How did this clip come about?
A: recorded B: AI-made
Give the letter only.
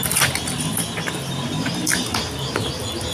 A